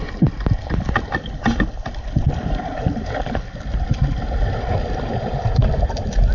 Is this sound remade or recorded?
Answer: recorded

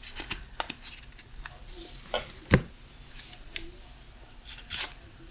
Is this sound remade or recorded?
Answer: recorded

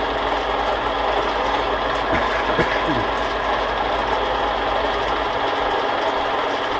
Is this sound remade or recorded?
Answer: recorded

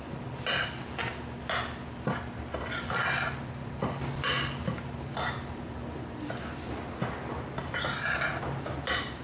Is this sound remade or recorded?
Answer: recorded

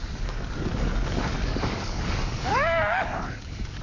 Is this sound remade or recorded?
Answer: remade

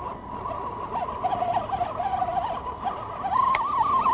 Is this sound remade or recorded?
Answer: recorded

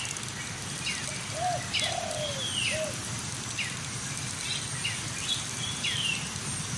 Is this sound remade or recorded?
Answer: recorded